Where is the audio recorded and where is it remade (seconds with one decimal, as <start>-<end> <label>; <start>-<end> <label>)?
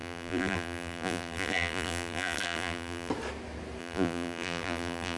0.0-3.1 remade; 3.1-3.8 recorded; 3.8-5.2 remade